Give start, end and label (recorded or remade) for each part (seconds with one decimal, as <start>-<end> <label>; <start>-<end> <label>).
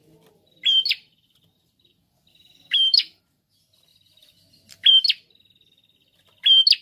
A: 0.0-2.3 recorded; 2.3-3.2 remade; 3.2-6.8 recorded